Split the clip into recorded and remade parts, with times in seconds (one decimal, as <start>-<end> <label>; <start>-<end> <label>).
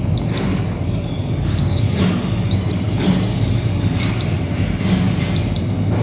0.0-0.5 recorded; 0.5-4.1 remade; 4.1-6.0 recorded